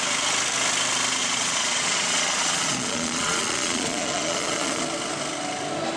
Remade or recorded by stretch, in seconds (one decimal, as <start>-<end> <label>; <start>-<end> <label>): 0.0-1.2 recorded; 1.2-4.8 remade; 4.8-6.0 recorded